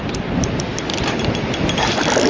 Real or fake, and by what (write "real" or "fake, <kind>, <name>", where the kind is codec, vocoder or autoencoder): real